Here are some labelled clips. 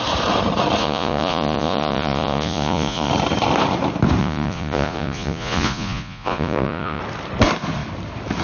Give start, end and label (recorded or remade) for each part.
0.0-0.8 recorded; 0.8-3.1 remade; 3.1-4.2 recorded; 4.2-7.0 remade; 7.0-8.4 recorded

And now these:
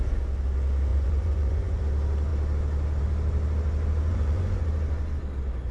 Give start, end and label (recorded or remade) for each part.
0.0-0.9 recorded; 0.9-1.8 remade; 1.8-4.1 recorded; 4.1-4.6 remade; 4.6-5.7 recorded

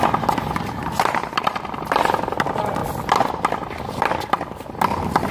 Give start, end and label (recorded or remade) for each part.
0.0-5.3 recorded

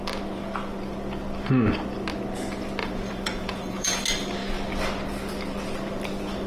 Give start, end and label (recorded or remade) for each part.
0.0-2.8 recorded; 2.8-4.0 remade; 4.0-6.5 recorded